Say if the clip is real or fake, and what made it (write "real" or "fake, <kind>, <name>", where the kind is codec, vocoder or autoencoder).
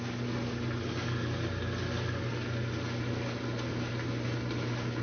real